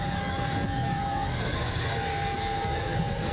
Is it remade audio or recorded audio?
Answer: remade